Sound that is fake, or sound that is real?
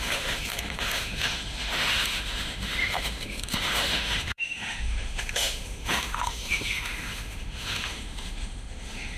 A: fake